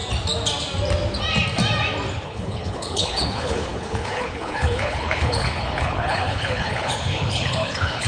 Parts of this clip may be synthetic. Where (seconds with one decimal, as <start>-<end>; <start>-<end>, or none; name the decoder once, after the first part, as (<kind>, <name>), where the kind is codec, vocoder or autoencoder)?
2.1-8.1 (codec, HILCodec)